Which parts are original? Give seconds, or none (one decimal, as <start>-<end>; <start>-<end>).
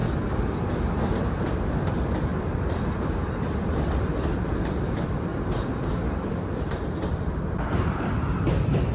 0.0-1.9